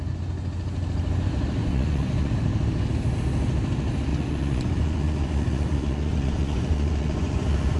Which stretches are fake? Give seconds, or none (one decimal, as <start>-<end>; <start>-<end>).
1.6-2.3; 4.1-7.8